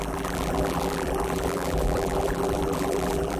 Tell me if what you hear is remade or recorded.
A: remade